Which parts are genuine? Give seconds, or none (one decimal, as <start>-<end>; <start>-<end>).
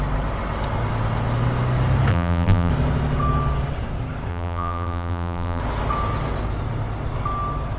0.0-2.1; 2.7-4.3; 5.6-7.8